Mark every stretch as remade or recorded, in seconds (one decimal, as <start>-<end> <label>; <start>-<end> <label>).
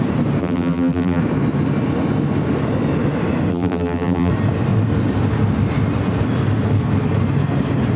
0.0-0.4 recorded; 0.4-1.2 remade; 1.2-3.5 recorded; 3.5-4.3 remade; 4.3-8.0 recorded